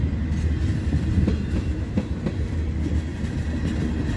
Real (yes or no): yes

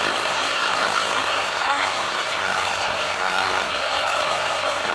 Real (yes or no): no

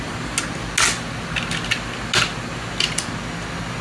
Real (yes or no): yes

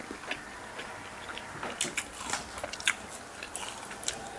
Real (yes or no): yes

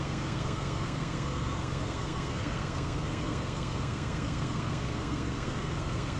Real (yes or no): no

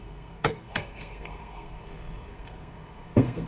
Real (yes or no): no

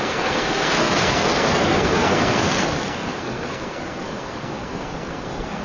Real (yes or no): no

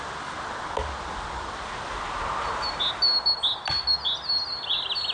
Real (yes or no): yes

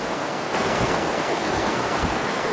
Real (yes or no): no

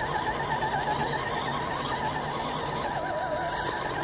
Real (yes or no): yes